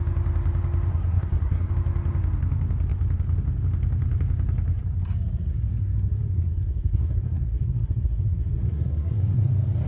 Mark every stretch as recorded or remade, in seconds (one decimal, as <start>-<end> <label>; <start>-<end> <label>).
0.0-0.9 recorded; 0.9-1.7 remade; 1.7-5.5 recorded; 5.5-9.5 remade; 9.5-9.9 recorded